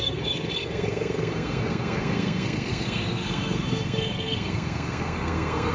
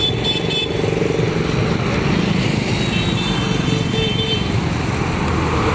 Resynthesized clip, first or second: first